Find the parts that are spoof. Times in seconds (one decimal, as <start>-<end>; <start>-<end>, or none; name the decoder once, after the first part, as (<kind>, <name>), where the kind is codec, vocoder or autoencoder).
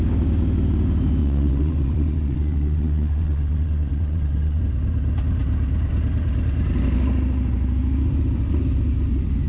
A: 1.2-4.6 (vocoder, WaveNeXt)